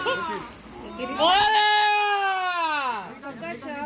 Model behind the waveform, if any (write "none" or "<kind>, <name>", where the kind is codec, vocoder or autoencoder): none